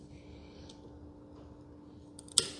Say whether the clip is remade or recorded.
recorded